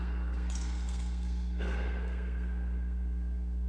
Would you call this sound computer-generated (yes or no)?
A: yes